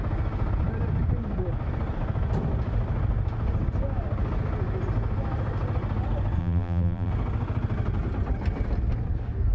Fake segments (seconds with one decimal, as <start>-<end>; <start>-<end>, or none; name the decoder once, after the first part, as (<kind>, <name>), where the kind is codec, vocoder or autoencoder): 6.4-7.1 (vocoder, BigVGAN v2)